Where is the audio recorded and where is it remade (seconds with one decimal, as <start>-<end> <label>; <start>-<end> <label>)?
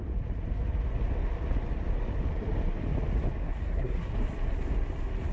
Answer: 0.0-3.4 recorded; 3.4-4.1 remade; 4.1-5.3 recorded